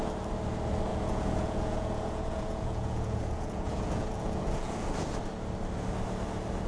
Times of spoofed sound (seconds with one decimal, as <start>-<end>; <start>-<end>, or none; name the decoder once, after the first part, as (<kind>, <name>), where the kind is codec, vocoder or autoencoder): 0.9-4.9 (vocoder, Vocos)